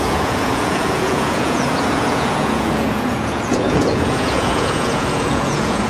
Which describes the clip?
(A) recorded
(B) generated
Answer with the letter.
B